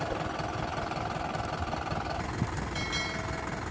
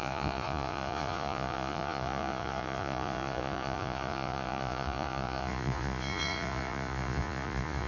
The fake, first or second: second